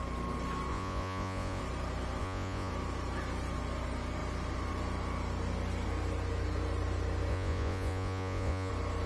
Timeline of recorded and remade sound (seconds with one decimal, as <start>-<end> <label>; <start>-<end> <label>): 0.0-0.7 recorded; 0.7-1.6 remade; 1.6-2.2 recorded; 2.2-2.7 remade; 2.7-7.3 recorded; 7.3-8.7 remade; 8.7-9.1 recorded